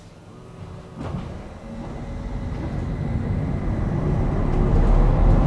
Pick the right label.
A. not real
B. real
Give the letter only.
B